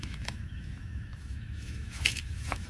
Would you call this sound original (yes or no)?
no